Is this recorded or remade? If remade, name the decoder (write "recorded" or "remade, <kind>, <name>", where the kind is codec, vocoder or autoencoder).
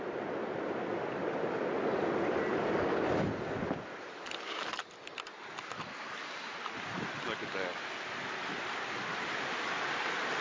recorded